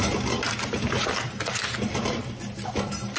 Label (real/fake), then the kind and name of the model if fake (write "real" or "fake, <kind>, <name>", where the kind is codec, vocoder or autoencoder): real